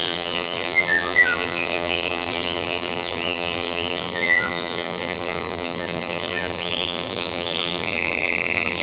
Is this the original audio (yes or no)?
no